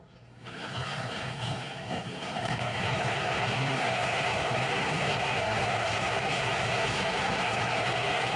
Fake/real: fake